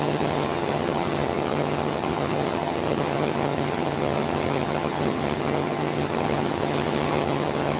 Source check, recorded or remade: remade